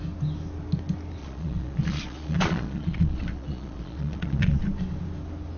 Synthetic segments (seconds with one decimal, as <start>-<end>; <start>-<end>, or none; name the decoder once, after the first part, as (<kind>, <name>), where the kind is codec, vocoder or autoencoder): 1.2-4.6 (vocoder, Vocos)